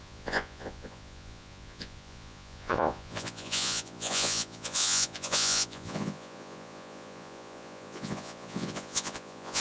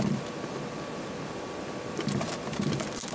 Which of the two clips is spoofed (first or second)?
first